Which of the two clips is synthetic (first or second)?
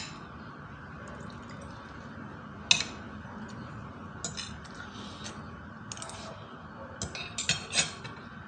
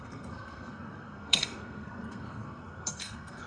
second